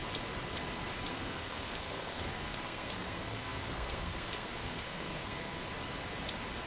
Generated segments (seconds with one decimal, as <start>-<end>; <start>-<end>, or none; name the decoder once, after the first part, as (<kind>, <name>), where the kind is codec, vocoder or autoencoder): 1.1-5.6 (codec, SNAC)

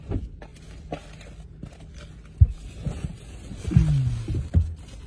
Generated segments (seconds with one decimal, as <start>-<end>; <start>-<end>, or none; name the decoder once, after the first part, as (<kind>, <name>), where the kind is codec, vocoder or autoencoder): none

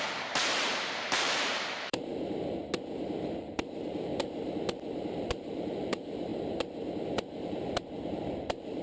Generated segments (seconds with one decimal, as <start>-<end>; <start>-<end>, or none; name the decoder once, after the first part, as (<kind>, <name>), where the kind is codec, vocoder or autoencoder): 0.0-2.1 (vocoder, BigVGAN v2); 3.2-4.1; 5.1-6.3; 7.4-8.8

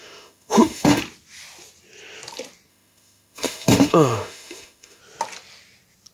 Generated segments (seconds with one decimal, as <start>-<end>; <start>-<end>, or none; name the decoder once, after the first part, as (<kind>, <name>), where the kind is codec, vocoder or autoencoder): 0.0-1.0 (autoencoder, DAC-VAE); 2.7-5.0

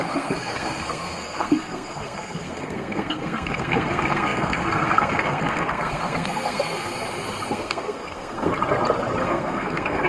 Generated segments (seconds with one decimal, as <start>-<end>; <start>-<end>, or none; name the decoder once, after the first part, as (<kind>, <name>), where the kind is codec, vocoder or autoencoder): 0.0-6.9 (codec, SNAC); 7.5-8.5; 9.2-10.1